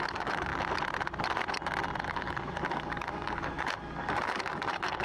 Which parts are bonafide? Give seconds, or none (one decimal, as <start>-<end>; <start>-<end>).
0.5-2.0